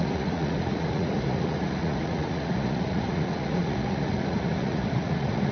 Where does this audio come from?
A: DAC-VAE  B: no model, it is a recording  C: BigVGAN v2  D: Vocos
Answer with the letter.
D